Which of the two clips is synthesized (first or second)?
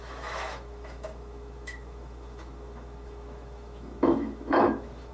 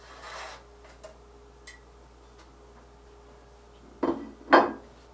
first